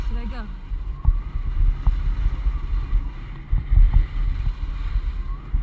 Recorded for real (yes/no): yes